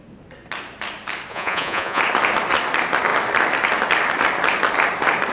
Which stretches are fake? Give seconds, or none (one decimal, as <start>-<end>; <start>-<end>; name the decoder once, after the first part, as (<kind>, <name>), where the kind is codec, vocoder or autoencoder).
1.3-2.0 (vocoder, Vocos)